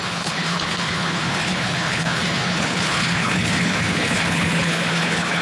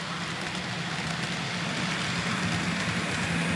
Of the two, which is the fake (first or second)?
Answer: first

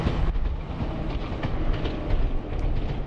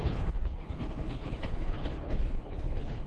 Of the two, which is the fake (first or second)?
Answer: second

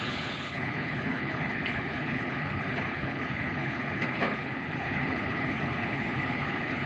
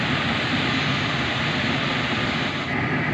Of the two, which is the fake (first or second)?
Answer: first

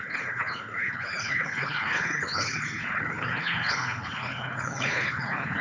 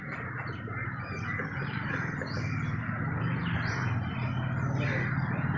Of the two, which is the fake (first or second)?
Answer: first